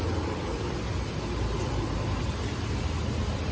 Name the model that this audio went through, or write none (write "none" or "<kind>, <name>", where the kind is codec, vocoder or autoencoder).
none